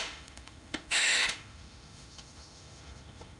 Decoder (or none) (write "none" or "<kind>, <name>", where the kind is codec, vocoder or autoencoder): autoencoder, DAC-VAE